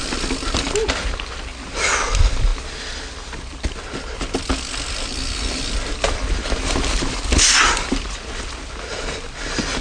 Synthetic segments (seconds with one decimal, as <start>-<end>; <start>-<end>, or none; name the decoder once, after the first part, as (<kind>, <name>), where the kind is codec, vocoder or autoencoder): none